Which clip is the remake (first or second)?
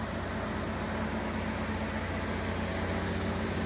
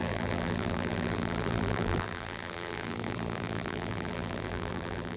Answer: second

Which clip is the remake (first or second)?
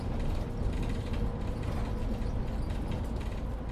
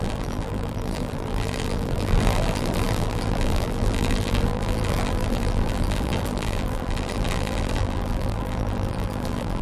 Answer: second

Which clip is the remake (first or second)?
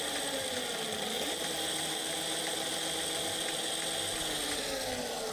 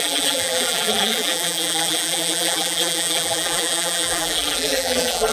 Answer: second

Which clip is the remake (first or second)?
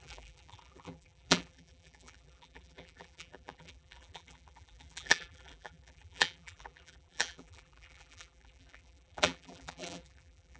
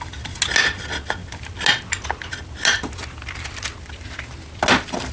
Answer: first